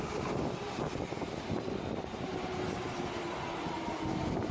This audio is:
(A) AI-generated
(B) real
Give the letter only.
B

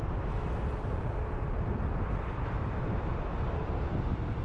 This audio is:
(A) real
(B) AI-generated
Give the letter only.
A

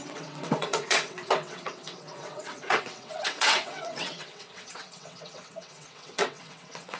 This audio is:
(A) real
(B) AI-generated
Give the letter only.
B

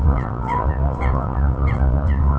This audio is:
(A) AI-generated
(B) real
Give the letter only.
A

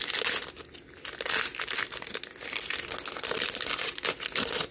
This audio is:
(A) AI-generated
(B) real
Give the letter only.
B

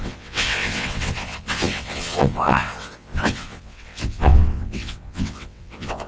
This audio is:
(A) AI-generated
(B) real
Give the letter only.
A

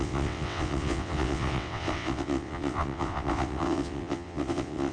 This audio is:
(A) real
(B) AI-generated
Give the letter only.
B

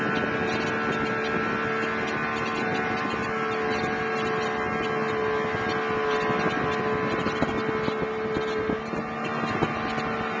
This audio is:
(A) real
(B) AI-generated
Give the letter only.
A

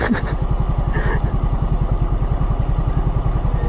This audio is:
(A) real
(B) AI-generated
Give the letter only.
A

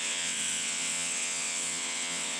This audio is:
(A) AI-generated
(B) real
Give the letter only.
A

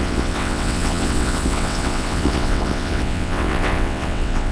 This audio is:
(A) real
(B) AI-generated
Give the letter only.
B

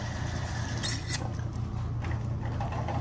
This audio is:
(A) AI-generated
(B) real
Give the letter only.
B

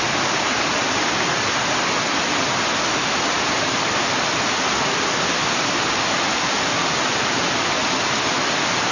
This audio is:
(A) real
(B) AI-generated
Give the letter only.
A